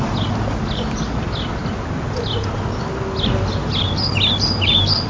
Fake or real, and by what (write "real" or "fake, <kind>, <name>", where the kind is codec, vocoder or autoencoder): real